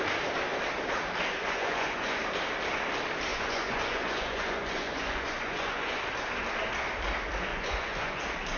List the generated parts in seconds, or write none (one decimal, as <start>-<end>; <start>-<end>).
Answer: 1.4-2.2; 3.3-6.0; 7.5-8.2